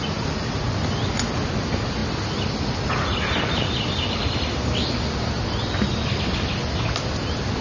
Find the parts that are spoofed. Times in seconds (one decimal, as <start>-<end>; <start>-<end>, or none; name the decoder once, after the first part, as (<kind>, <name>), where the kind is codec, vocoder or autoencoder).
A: none